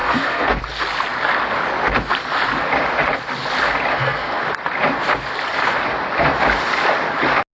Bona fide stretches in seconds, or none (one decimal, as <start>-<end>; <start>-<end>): 0.6-3.9; 4.4-7.5